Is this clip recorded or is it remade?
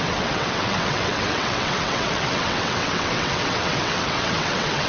remade